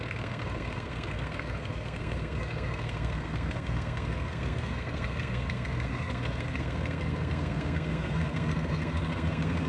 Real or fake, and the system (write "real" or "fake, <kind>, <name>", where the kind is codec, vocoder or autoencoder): fake, codec, SNAC